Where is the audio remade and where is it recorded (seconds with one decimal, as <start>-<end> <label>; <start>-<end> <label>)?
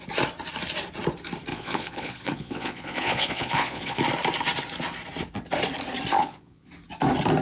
0.0-1.5 recorded; 1.5-4.0 remade; 4.0-6.2 recorded; 6.2-6.7 remade; 6.7-7.4 recorded